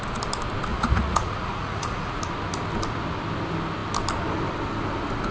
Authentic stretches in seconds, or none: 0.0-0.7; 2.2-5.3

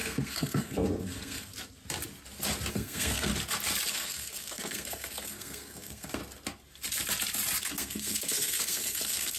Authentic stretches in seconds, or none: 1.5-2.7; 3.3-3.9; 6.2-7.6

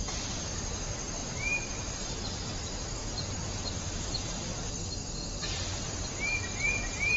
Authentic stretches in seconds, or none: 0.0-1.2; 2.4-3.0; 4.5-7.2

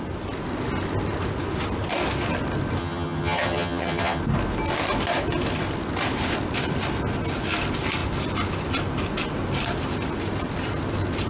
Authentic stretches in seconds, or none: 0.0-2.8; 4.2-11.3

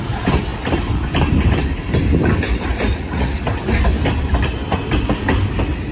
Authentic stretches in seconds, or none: 0.0-2.9; 3.4-5.9

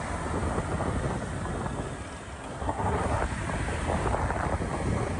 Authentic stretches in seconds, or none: 0.0-2.5; 3.2-5.2

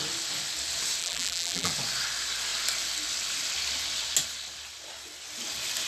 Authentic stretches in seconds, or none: 0.0-1.0; 1.7-5.9

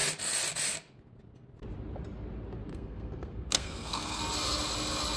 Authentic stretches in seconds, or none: 0.0-2.7; 4.2-5.2